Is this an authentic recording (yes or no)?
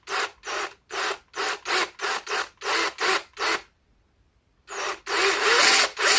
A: yes